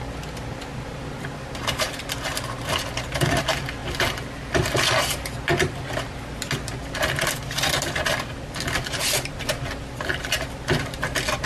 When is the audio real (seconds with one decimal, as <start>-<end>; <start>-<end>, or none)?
0.0-11.5